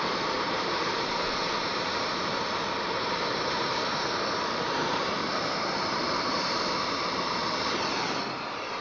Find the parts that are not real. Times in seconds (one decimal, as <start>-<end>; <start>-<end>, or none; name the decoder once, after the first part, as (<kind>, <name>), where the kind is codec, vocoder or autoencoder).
0.0-7.4 (vocoder, BigVGAN v2); 8.3-8.8